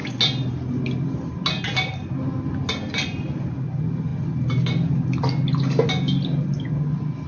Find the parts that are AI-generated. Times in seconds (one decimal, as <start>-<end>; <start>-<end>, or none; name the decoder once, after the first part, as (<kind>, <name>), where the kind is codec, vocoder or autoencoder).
none